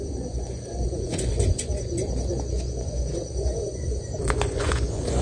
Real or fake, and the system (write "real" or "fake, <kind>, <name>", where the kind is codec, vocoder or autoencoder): fake, vocoder, Vocos